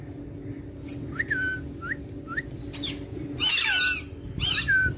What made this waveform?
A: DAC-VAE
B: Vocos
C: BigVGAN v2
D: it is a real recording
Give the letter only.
D